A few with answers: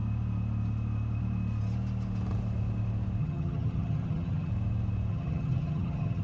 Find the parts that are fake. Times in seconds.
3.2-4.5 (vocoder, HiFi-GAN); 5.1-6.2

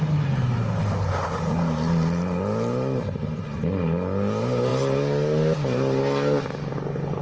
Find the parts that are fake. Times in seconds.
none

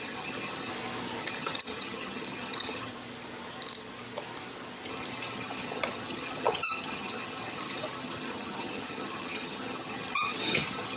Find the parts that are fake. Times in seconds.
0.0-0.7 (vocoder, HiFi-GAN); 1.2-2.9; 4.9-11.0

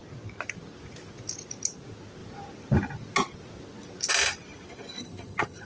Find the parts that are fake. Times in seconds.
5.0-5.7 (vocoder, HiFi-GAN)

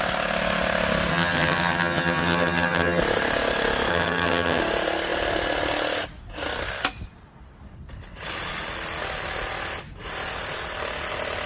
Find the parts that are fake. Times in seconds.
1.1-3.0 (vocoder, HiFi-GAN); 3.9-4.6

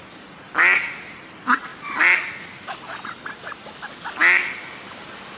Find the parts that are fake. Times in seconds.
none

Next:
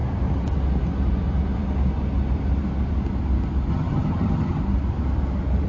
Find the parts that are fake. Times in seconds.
3.7-4.6 (vocoder, HiFi-GAN)

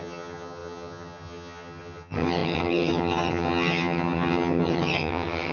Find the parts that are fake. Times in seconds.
0.0-5.5 (vocoder, HiFi-GAN)